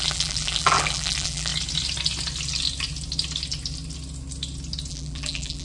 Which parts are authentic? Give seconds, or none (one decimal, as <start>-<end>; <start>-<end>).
1.5-4.9